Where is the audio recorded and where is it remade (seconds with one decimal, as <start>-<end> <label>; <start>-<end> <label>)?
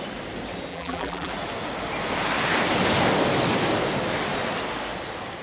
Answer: 0.0-0.7 recorded; 0.7-1.3 remade; 1.3-5.4 recorded